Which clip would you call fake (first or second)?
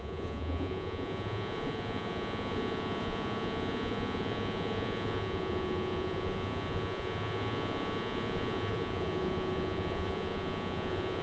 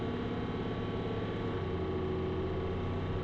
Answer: first